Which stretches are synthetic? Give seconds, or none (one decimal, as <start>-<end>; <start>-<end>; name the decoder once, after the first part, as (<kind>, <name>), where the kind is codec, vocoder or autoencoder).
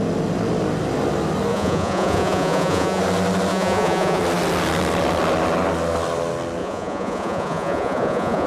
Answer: 1.5-3.0 (vocoder, Vocos); 3.5-4.2; 6.6-8.5